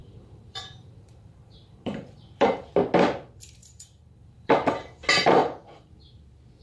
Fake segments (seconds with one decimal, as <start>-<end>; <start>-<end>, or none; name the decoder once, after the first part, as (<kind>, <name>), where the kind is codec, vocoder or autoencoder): 0.0-2.7 (vocoder, BigVGAN v2); 3.6-5.0; 5.4-5.9